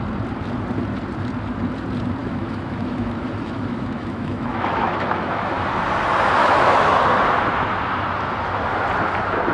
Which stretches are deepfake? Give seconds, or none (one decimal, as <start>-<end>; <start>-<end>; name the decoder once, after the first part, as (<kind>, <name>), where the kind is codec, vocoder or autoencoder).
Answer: 2.2-5.5 (autoencoder, DAC-VAE); 6.4-6.9